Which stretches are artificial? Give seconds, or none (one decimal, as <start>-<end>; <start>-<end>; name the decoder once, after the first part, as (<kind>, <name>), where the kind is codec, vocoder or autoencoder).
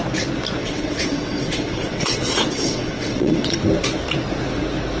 0.6-3.6 (vocoder, WaveNeXt)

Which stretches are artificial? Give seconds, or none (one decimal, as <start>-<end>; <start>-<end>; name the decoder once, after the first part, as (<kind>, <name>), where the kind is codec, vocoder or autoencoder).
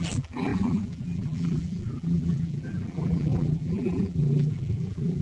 0.0-5.2 (vocoder, BigVGAN v2)